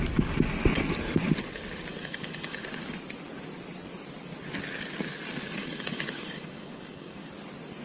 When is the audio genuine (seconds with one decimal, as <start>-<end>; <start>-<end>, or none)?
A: 0.0-1.9; 2.6-5.6; 7.3-7.8

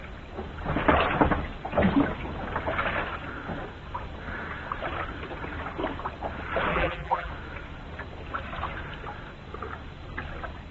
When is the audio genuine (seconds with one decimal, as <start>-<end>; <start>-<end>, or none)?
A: 0.0-6.7; 7.3-10.7

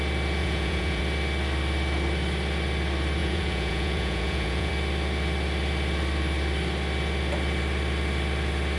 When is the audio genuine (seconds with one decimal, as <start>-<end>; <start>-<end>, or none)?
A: 0.0-0.4; 1.0-3.2; 4.7-8.8

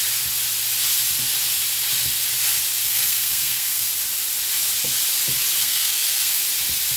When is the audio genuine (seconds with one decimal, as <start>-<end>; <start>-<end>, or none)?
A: 0.0-2.8; 3.9-5.6; 6.4-7.0

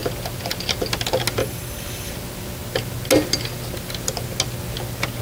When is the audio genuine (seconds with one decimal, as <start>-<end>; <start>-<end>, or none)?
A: 0.0-1.4; 2.1-5.2

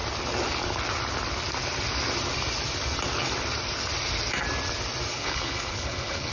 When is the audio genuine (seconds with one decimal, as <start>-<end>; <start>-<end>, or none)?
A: 0.0-5.1